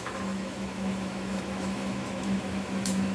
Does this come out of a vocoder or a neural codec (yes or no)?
yes